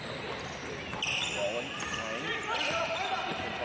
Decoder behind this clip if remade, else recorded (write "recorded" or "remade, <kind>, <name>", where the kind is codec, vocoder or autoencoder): recorded